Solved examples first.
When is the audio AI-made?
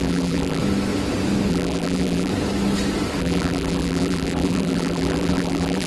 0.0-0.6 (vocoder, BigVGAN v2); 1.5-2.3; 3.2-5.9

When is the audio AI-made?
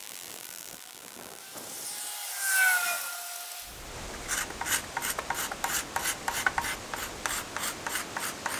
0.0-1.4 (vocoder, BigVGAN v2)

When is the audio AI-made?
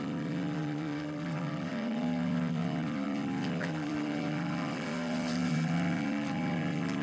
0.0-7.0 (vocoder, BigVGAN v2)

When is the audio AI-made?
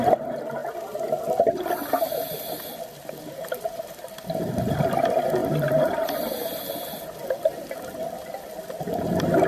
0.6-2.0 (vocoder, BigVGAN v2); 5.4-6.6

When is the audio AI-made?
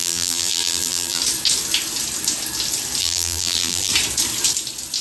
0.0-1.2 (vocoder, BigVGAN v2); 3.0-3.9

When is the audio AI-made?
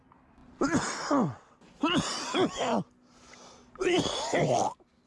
none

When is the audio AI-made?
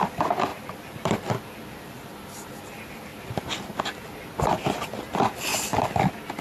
0.5-1.2 (vocoder, BigVGAN v2); 3.1-3.8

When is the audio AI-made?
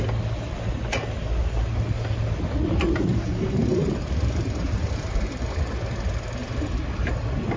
3.1-5.6 (vocoder, BigVGAN v2); 6.4-7.1